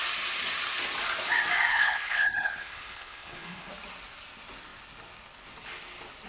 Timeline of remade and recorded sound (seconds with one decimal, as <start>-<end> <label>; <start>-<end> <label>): 0.0-1.7 recorded; 1.7-3.7 remade; 3.7-6.3 recorded

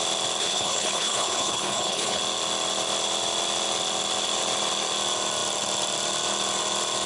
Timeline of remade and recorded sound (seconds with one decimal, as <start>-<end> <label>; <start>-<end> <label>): 0.0-0.4 recorded; 0.4-2.2 remade; 2.2-7.1 recorded

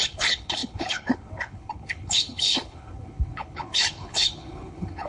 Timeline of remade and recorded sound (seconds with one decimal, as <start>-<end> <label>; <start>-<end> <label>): 0.0-5.1 remade

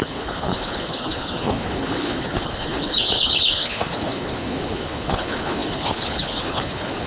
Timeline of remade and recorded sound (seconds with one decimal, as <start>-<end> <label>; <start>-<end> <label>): 0.0-7.1 remade

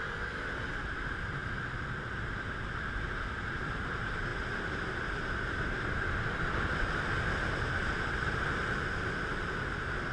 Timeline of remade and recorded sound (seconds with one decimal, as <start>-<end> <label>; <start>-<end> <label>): 0.0-10.1 recorded